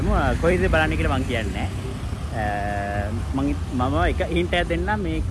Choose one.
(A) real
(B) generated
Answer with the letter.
A